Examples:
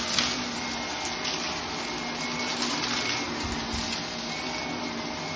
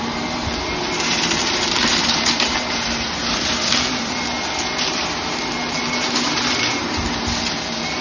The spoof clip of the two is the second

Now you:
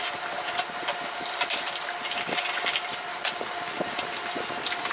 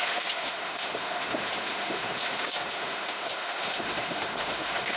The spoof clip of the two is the second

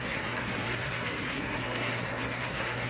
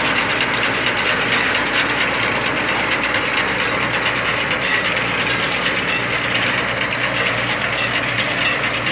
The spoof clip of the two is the first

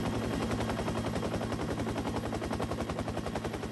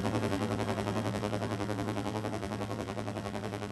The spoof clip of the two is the second